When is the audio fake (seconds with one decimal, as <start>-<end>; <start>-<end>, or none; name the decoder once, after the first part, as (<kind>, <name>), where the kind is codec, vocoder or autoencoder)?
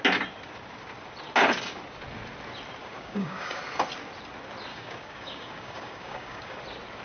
2.8-3.6 (codec, DAC); 4.7-6.6